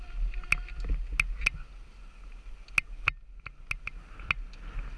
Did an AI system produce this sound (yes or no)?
no